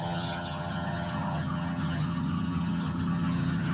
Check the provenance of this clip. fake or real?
fake